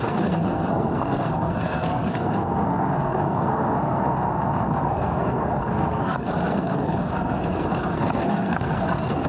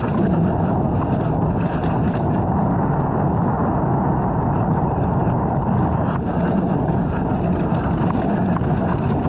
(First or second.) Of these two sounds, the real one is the second